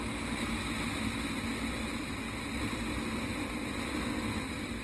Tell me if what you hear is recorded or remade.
recorded